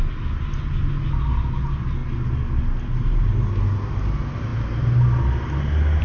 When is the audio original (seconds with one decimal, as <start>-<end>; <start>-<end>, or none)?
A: 0.0-6.0